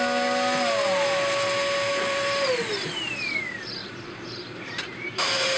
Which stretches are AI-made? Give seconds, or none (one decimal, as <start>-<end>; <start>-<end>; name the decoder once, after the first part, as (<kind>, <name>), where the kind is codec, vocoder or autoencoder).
1.9-2.7 (vocoder, BigVGAN v2); 3.8-5.6